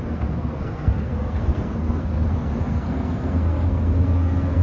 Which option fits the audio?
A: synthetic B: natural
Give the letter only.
A